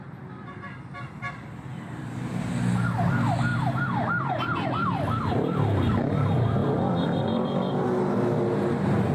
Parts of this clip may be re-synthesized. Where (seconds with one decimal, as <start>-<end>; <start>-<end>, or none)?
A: 1.7-2.5; 3.5-6.1; 6.6-7.7